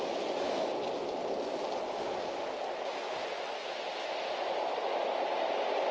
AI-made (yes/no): no